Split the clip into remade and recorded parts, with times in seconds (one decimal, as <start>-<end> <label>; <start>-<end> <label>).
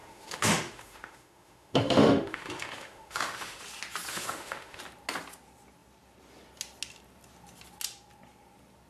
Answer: 0.0-3.6 remade; 3.6-4.1 recorded; 4.1-4.8 remade; 4.8-8.9 recorded